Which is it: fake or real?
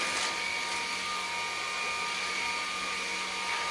real